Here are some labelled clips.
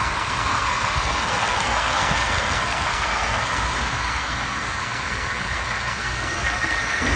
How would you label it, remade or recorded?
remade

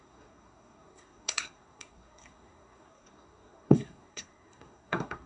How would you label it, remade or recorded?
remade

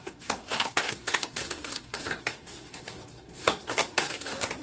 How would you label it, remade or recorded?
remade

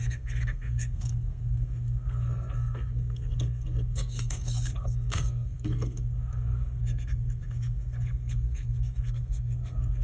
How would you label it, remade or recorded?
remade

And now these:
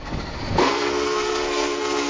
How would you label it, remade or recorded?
remade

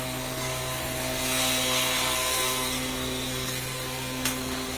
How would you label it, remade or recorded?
remade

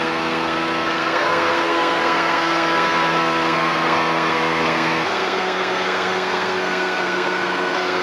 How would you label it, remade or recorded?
remade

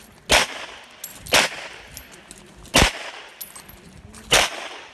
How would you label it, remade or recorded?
recorded